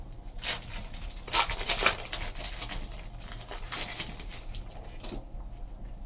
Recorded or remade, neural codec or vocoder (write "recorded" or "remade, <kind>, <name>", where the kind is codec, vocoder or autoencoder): recorded